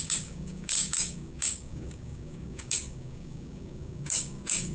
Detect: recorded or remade remade